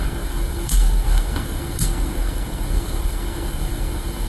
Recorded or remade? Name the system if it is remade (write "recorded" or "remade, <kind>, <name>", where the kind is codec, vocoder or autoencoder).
remade, codec, SNAC